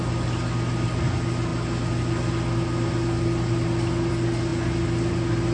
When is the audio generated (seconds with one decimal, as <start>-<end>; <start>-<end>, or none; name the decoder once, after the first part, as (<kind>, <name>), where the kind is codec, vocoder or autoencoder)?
none